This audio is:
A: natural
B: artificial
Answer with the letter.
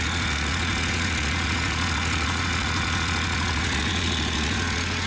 B